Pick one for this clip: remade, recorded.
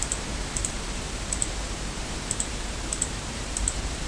remade